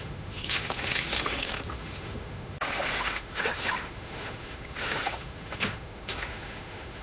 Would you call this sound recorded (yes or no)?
no